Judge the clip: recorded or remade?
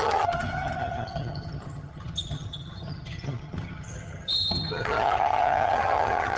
remade